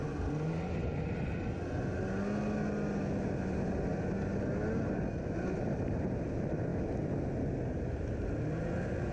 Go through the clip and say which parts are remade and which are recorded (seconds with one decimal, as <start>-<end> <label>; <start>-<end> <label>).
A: 0.0-9.1 recorded